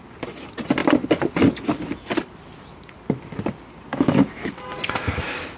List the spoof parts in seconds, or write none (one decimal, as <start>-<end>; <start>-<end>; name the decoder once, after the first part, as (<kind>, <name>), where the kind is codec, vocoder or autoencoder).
3.9-4.5 (autoencoder, DAC-VAE)